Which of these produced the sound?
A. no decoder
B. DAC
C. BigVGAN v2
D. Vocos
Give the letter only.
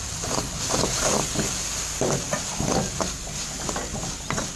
A